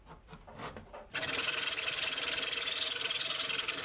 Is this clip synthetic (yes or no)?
yes